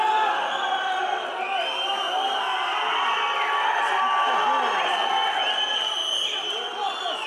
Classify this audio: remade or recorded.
recorded